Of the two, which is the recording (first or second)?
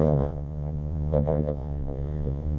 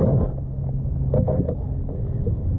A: second